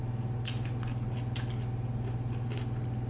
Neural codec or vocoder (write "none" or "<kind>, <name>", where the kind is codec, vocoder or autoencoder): none